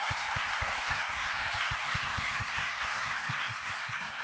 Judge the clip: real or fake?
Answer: fake